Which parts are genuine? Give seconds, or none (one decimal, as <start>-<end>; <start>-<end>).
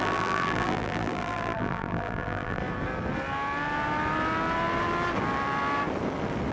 2.6-6.5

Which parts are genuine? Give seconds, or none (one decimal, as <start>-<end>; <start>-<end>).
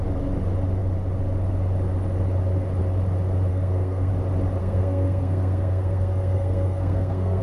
0.0-3.5; 4.1-4.6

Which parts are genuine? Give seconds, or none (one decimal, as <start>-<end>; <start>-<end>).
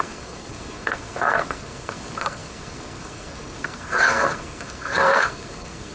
none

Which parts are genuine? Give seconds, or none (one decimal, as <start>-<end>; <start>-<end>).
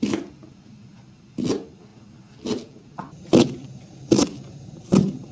0.0-5.3